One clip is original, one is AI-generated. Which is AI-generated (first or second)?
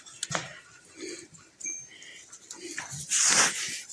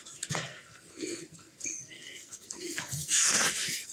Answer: second